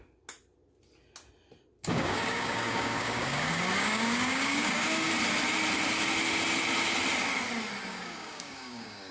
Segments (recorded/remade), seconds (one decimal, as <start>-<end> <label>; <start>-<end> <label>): 0.0-1.8 recorded; 1.8-5.1 remade; 5.1-7.9 recorded; 7.9-9.1 remade